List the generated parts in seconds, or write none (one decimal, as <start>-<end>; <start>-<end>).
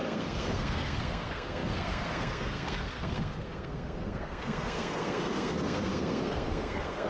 0.0-7.1